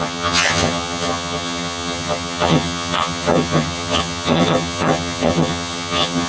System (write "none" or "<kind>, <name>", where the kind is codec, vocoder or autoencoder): vocoder, HiFi-GAN